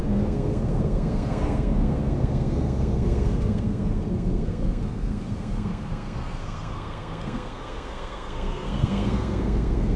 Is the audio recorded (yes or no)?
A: no